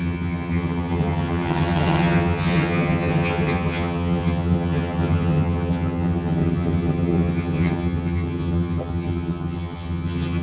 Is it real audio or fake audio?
fake